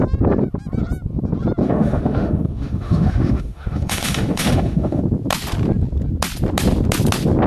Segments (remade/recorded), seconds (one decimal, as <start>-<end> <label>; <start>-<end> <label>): 0.0-1.6 recorded; 1.6-5.0 remade; 5.0-7.5 recorded